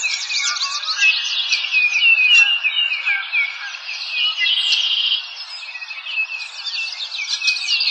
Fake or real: real